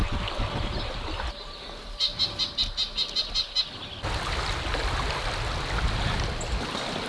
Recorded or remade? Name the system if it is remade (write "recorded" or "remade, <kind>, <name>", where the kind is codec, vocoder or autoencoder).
recorded